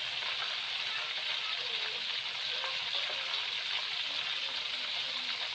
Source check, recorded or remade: recorded